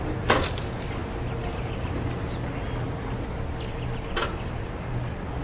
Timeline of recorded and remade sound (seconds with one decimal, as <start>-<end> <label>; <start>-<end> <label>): 0.0-5.4 recorded